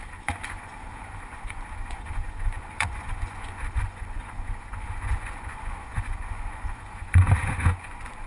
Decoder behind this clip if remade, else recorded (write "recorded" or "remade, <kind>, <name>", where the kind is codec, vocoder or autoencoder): remade, vocoder, Vocos